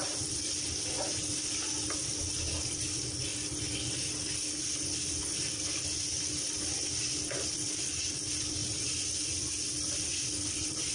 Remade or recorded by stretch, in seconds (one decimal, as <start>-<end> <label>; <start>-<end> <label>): 0.0-6.0 recorded; 6.0-6.8 remade; 6.8-8.6 recorded; 8.6-9.4 remade; 9.4-10.1 recorded; 10.1-10.9 remade